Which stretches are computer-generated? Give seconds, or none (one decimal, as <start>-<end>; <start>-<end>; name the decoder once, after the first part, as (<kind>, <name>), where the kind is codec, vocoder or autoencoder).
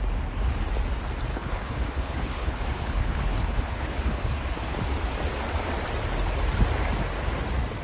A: 1.3-4.3 (codec, HILCodec)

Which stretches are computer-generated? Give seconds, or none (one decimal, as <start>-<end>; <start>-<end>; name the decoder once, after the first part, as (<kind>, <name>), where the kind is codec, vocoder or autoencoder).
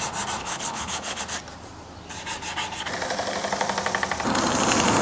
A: 0.4-1.2 (codec, HILCodec)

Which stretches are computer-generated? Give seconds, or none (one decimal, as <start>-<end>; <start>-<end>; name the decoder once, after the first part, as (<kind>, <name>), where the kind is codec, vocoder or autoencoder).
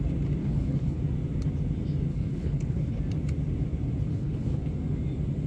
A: 0.4-1.0 (codec, HILCodec); 2.1-3.0; 4.1-4.7